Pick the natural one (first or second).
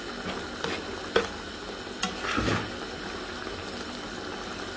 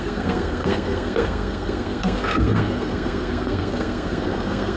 first